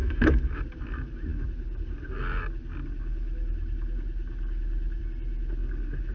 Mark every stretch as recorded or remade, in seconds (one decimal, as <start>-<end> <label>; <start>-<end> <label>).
0.0-0.6 remade; 0.6-6.1 recorded